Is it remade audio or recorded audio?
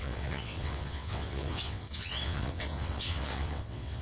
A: remade